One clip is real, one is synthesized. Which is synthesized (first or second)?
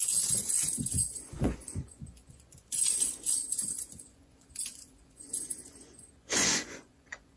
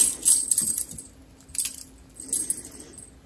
first